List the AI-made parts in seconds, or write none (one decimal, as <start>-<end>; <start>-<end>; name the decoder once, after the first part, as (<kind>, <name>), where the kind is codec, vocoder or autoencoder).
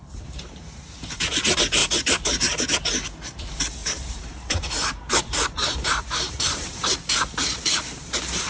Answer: 0.0-1.2 (vocoder, BigVGAN v2); 3.8-8.1